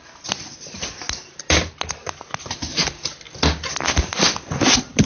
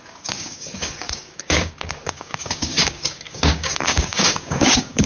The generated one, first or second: second